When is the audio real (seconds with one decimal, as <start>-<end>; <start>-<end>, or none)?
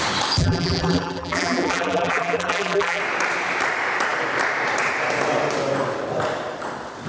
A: 0.0-0.4; 3.0-7.1